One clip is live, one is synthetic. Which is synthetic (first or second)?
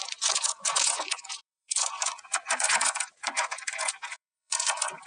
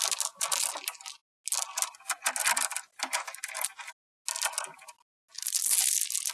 first